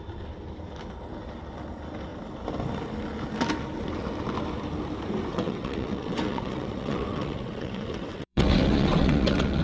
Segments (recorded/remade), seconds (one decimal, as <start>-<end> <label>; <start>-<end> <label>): 0.0-5.3 recorded; 5.3-9.6 remade